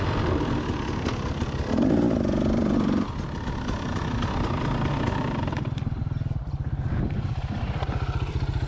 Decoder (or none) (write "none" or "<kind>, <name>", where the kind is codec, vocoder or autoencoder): vocoder, BigVGAN v2